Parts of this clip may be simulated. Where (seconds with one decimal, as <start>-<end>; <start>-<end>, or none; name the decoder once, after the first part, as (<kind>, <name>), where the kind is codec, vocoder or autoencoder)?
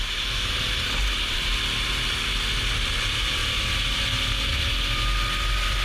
3.4-4.0 (vocoder, BigVGAN v2)